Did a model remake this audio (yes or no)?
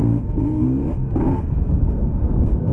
yes